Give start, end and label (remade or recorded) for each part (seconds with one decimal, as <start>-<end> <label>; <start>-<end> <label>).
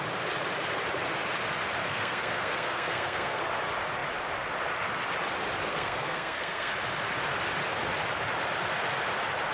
0.0-1.8 recorded; 1.8-3.4 remade; 3.4-5.7 recorded; 5.7-6.7 remade; 6.7-9.5 recorded